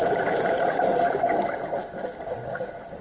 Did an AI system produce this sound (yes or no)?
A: no